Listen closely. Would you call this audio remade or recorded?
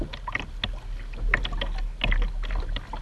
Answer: recorded